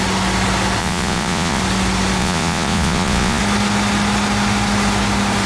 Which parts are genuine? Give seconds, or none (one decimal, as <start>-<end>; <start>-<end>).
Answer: 0.0-0.8; 1.6-2.2; 3.4-5.5